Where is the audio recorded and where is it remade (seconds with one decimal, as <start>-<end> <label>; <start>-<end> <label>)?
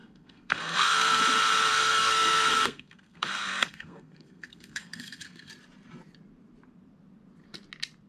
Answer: 0.0-1.2 remade; 1.2-1.7 recorded; 1.7-5.5 remade; 5.5-8.1 recorded